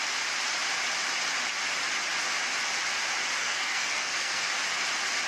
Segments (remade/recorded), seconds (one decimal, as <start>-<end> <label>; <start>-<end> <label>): 0.0-3.4 recorded; 3.4-4.5 remade; 4.5-5.3 recorded

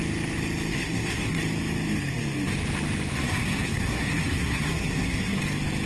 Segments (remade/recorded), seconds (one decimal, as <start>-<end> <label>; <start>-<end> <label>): 0.0-0.7 recorded; 0.7-1.4 remade; 1.4-3.1 recorded; 3.1-5.4 remade; 5.4-5.9 recorded

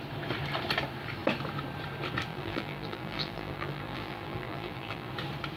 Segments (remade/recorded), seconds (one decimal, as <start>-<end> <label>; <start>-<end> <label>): 0.0-2.3 recorded; 2.3-5.1 remade; 5.1-5.6 recorded

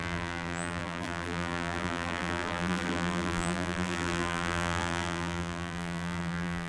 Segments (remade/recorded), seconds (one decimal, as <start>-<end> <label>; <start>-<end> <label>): 0.0-6.7 remade

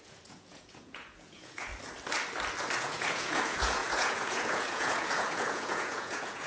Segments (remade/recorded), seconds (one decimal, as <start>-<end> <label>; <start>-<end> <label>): 0.0-1.7 remade; 1.7-2.8 recorded; 2.8-6.5 remade

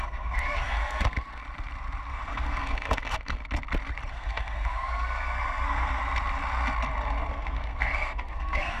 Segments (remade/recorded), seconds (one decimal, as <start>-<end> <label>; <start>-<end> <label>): 0.0-1.4 remade; 1.4-2.1 recorded; 2.1-3.4 remade; 3.4-4.1 recorded; 4.1-6.0 remade; 6.0-7.3 recorded; 7.3-8.8 remade

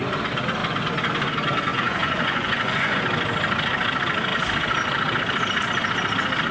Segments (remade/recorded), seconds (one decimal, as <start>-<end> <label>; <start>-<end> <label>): 0.0-1.7 recorded; 1.7-3.0 remade; 3.0-6.5 recorded